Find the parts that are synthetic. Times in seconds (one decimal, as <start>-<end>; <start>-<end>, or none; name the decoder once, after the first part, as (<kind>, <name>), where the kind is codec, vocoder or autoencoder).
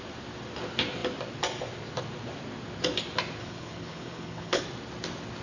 3.4-4.6 (codec, HILCodec)